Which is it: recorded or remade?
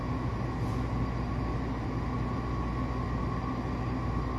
recorded